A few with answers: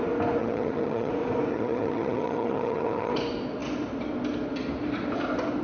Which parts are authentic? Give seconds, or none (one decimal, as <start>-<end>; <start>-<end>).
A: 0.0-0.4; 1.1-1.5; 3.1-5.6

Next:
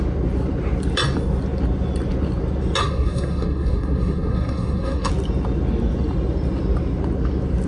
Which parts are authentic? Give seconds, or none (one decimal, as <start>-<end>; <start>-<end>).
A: 0.0-2.8; 5.1-7.7

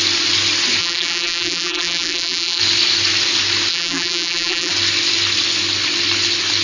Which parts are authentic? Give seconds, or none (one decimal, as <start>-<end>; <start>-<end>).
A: 0.0-0.8; 2.6-3.7; 4.7-6.6